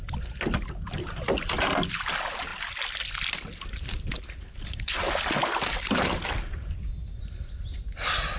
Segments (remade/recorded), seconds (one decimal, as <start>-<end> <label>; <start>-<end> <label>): 0.0-8.4 recorded